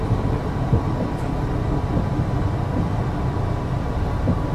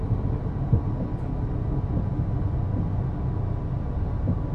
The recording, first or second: second